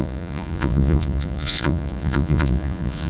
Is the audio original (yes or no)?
no